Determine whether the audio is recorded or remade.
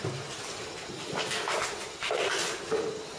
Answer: recorded